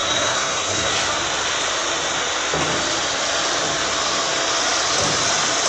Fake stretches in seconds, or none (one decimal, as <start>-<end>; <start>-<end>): 0.0-0.9